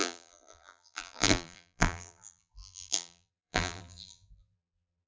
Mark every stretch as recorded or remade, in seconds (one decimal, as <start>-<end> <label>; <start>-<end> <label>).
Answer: 0.0-5.1 remade